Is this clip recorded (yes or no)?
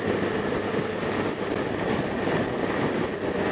yes